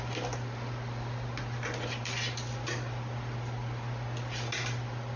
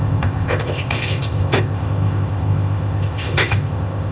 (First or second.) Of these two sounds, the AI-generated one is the second